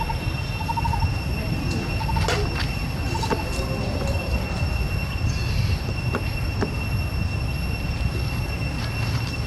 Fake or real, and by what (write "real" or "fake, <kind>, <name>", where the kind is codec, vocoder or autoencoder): real